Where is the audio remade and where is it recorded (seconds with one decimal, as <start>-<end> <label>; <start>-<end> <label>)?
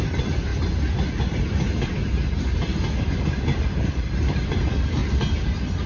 0.0-5.9 recorded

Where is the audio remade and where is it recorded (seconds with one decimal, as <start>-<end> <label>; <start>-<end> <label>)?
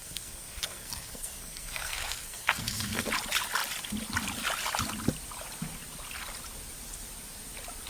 0.0-3.1 remade; 3.1-7.9 recorded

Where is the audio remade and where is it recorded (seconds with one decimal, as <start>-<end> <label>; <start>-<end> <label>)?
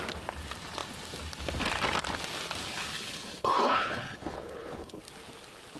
0.0-2.6 recorded; 2.6-5.0 remade; 5.0-5.8 recorded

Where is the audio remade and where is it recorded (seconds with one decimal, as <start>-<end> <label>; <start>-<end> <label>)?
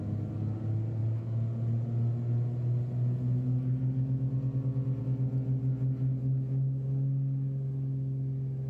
0.0-8.7 recorded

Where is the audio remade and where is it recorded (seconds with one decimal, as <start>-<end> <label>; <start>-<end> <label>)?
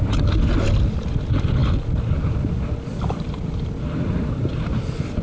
0.0-5.2 recorded